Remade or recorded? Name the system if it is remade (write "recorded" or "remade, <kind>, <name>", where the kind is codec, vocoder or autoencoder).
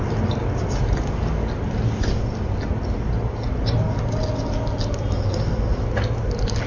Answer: recorded